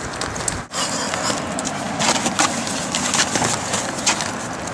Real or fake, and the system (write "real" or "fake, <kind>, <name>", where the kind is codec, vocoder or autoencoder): real